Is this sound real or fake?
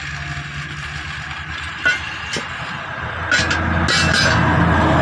real